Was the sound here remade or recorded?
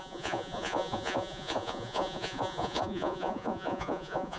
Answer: remade